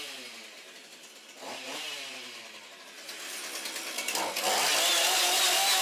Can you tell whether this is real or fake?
real